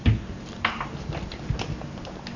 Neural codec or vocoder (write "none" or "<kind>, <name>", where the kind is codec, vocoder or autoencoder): none